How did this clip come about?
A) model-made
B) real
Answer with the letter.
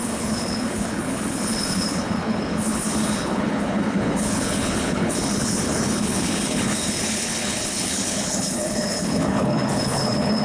A